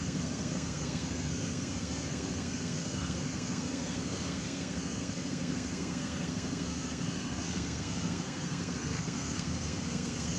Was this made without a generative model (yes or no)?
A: no